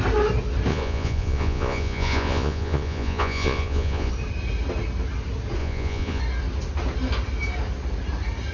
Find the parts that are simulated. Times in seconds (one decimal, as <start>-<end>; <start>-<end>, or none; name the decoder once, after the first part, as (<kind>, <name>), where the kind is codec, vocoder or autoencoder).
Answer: 0.7-4.1 (vocoder, Vocos); 5.6-6.2